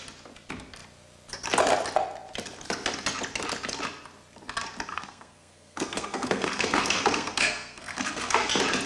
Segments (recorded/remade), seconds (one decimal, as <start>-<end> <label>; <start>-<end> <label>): 0.0-4.9 recorded; 4.9-8.5 remade; 8.5-8.9 recorded